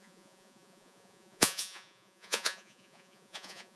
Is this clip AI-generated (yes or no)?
yes